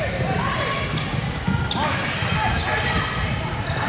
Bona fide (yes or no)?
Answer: yes